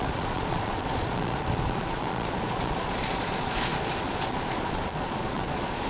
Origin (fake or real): fake